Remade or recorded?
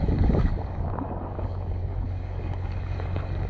remade